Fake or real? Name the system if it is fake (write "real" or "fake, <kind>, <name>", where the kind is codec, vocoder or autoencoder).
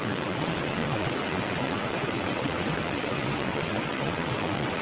fake, vocoder, WaveNeXt